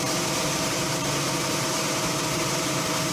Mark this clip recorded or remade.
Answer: remade